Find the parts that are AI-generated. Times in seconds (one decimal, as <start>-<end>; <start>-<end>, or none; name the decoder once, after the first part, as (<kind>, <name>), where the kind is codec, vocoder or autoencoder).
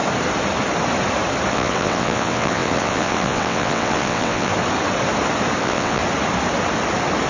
1.5-4.5 (vocoder, WaveNeXt); 5.6-6.0